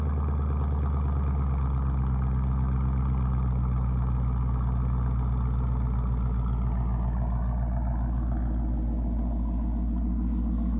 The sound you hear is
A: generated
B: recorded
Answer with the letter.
B